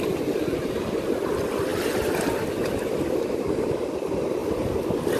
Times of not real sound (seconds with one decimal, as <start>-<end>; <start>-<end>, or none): none